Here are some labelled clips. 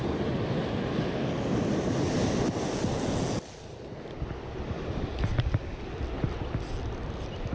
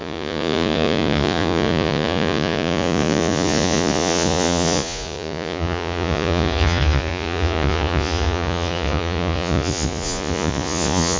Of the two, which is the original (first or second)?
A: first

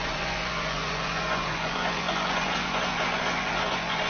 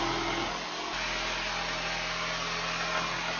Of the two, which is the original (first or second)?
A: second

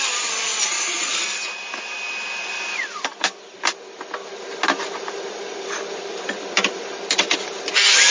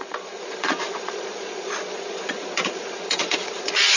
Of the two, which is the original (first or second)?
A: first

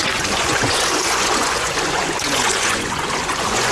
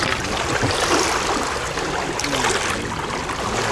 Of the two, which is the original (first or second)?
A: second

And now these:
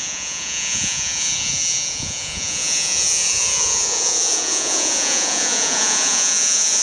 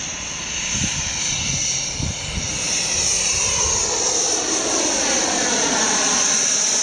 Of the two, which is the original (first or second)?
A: second